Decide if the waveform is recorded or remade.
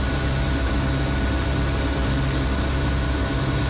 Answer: recorded